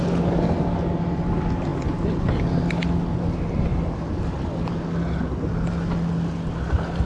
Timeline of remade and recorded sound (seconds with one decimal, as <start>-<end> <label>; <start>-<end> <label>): 0.0-7.1 recorded